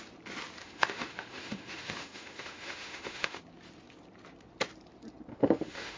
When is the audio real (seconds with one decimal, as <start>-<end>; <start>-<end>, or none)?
0.0-0.6; 3.4-5.3